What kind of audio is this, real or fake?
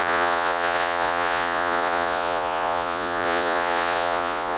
fake